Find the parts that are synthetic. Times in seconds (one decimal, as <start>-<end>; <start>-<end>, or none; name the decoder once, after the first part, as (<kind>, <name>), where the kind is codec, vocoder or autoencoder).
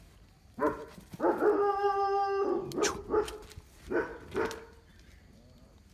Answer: none